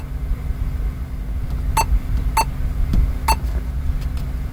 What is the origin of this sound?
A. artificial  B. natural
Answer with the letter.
B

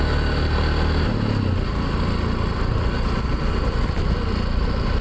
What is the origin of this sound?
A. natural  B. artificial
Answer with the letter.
A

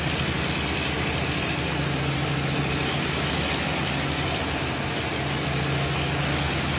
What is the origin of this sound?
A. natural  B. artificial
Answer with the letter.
A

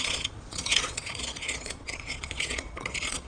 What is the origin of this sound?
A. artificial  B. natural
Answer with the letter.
A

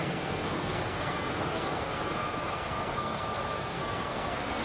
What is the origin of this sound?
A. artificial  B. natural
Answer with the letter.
A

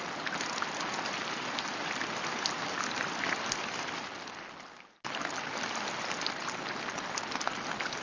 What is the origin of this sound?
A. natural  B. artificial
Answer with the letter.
A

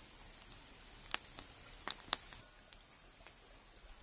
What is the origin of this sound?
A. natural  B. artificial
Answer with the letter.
A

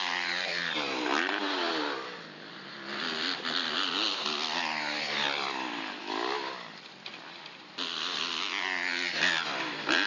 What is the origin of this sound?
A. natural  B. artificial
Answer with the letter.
A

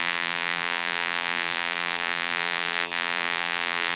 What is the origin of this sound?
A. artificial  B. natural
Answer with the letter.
A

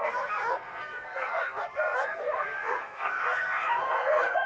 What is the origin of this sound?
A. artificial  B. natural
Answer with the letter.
A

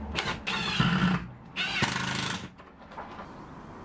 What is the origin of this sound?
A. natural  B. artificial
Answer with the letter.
A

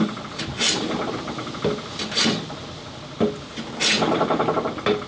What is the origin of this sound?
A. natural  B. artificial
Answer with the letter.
A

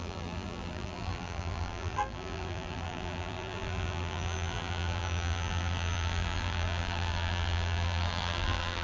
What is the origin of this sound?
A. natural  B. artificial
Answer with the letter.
B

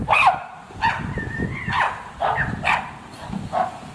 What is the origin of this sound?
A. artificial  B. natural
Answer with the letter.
B